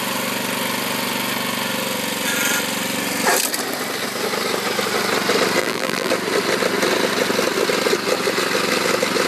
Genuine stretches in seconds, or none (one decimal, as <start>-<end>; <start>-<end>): 0.0-5.6; 6.1-9.3